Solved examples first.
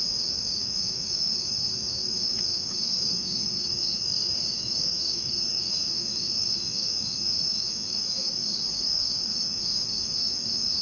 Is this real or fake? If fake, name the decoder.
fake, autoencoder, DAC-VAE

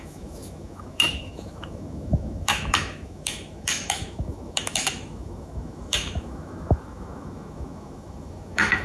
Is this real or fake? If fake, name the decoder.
fake, autoencoder, DAC-VAE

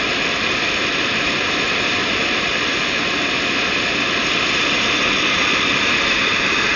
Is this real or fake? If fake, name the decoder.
fake, vocoder, BigVGAN v2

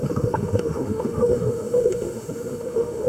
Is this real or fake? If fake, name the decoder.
fake, autoencoder, DAC-VAE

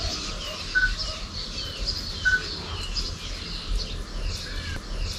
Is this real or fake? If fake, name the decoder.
real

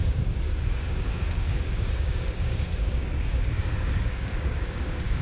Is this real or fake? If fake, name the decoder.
fake, codec, DAC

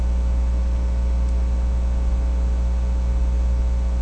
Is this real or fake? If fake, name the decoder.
real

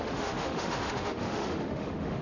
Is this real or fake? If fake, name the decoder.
fake, autoencoder, DAC-VAE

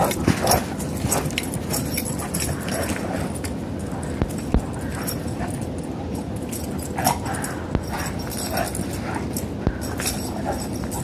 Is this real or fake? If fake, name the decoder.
real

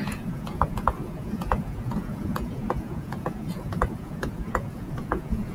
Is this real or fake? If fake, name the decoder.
fake, vocoder, Vocos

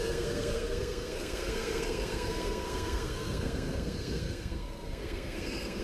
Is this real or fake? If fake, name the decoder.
fake, codec, SNAC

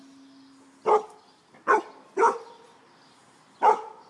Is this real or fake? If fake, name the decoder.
real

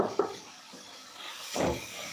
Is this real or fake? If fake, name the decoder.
fake, codec, DAC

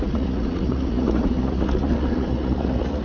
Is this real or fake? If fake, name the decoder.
fake, vocoder, Vocos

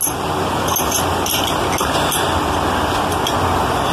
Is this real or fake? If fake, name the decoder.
real